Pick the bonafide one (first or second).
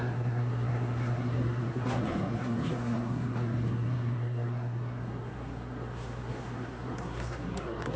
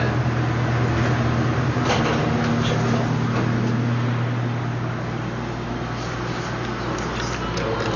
second